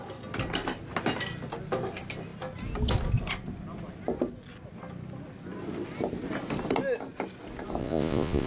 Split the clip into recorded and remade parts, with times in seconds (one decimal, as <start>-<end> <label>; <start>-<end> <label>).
0.0-7.8 recorded; 7.8-8.5 remade